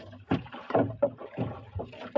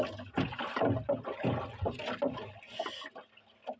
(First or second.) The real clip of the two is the second